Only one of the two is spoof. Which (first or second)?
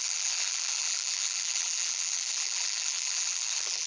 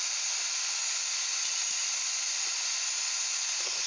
first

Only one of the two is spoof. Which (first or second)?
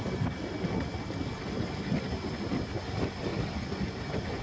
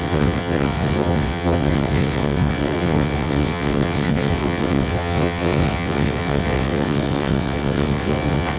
second